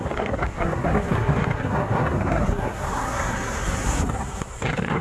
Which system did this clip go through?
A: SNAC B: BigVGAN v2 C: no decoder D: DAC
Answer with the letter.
A